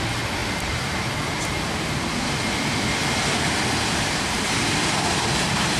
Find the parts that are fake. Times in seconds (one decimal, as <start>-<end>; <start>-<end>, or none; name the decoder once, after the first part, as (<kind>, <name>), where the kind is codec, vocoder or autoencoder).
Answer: 0.4-2.4 (vocoder, BigVGAN v2); 3.9-5.8